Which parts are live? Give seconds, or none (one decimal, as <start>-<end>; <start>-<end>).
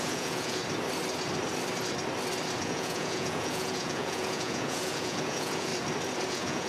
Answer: 0.6-2.6; 5.7-6.3